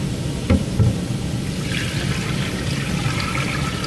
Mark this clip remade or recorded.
recorded